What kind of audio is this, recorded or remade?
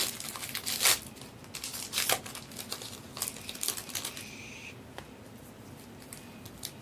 recorded